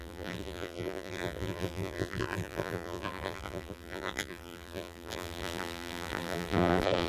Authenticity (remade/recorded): remade